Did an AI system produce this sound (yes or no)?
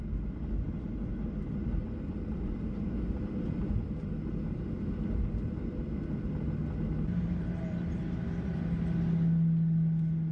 no